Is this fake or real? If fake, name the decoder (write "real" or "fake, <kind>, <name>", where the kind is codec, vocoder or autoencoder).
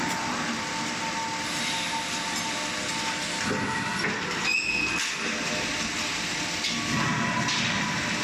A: real